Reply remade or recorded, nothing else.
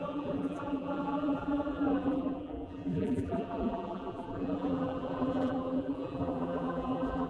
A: remade